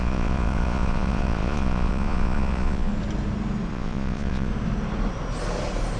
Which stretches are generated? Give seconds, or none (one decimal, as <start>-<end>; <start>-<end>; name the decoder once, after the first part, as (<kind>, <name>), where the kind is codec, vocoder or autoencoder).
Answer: 0.0-2.9 (vocoder, Vocos); 3.7-4.5